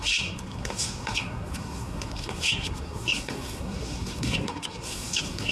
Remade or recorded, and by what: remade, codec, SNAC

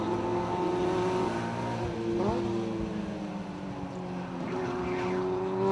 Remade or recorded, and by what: recorded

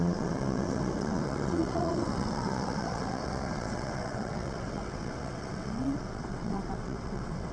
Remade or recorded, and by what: remade, vocoder, WaveNeXt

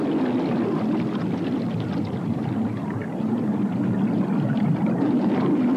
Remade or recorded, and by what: recorded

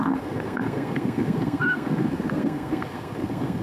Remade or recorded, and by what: remade, codec, SNAC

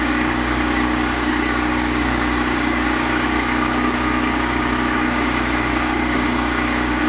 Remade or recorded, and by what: remade, codec, DAC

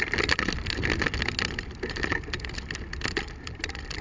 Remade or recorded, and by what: recorded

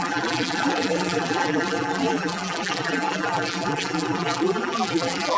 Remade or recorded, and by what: remade, vocoder, BigVGAN v2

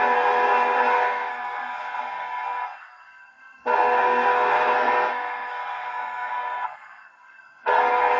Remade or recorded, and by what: remade, codec, SNAC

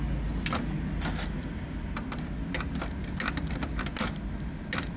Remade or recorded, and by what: recorded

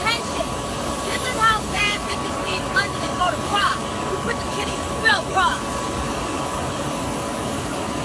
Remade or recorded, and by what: remade, codec, DAC